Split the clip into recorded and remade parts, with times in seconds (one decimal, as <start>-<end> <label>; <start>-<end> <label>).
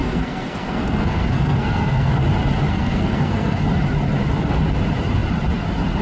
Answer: 0.0-2.1 remade; 2.1-2.7 recorded; 2.7-3.6 remade; 3.6-6.0 recorded